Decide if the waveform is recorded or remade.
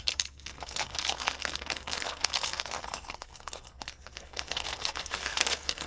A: remade